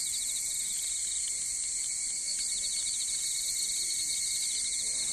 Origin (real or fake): real